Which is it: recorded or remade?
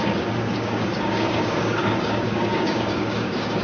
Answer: remade